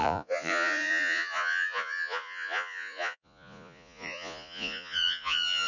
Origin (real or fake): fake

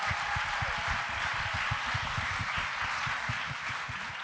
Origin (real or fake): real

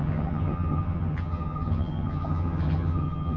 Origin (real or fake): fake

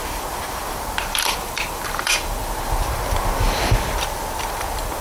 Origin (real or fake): fake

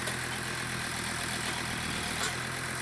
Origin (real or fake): real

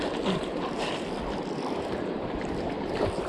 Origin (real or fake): fake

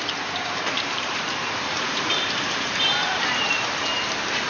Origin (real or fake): fake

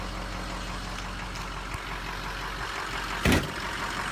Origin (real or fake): real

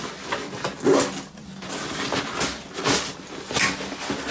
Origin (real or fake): real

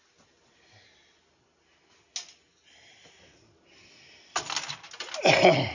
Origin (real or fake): real